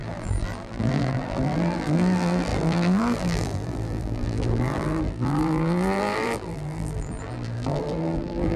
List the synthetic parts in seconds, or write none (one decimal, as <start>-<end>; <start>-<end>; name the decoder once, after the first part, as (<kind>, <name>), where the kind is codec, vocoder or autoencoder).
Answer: 0.0-8.6 (vocoder, BigVGAN v2)